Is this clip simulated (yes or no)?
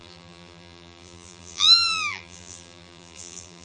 yes